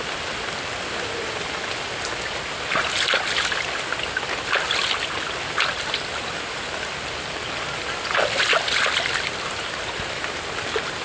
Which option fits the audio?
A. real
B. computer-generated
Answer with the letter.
A